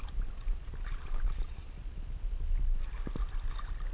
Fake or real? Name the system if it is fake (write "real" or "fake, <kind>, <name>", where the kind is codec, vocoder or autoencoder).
real